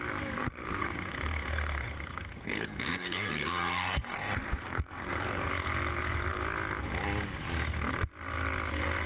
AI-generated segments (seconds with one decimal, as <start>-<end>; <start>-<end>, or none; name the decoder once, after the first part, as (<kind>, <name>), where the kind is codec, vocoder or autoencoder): 0.4-5.5 (codec, SNAC)